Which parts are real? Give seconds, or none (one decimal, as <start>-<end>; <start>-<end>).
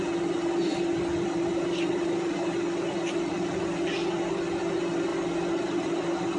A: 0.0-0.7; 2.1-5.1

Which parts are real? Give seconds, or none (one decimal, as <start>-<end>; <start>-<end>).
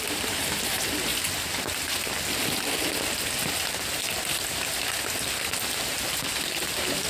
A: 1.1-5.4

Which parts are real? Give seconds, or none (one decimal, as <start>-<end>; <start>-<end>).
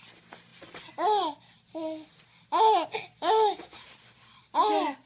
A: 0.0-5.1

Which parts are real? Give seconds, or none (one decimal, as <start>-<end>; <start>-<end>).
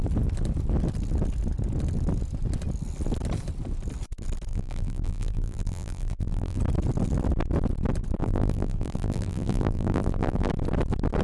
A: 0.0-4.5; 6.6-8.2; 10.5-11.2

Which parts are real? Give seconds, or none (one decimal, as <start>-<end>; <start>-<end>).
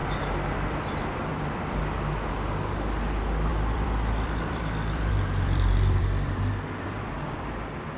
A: 1.8-3.5; 7.1-8.0